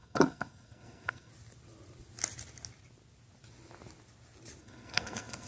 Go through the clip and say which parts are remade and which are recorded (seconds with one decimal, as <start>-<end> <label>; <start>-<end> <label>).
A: 0.0-1.3 remade; 1.3-4.6 recorded; 4.6-5.5 remade